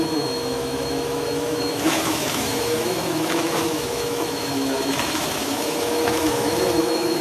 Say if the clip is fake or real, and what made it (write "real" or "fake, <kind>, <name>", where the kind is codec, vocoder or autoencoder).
fake, autoencoder, DAC-VAE